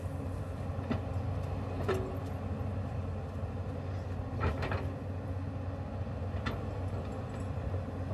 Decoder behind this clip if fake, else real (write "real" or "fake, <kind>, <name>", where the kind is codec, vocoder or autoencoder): real